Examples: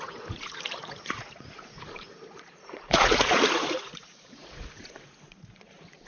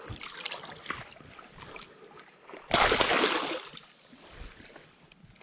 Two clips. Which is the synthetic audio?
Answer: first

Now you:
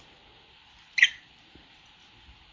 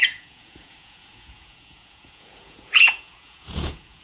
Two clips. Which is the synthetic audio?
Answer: second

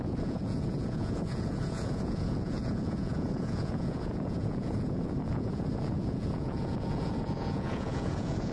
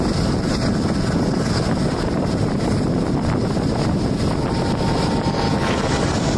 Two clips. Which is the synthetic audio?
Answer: first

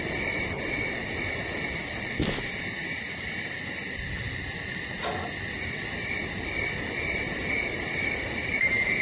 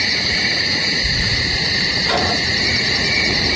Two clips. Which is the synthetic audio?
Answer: second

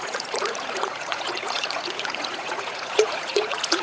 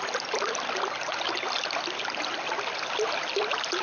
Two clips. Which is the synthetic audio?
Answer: first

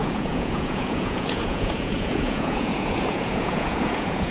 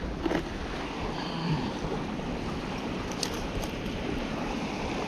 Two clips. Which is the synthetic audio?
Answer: first